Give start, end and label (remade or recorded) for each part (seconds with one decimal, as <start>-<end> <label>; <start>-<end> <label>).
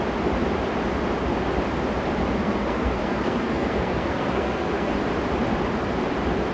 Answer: 0.0-2.2 recorded; 2.2-5.0 remade; 5.0-6.5 recorded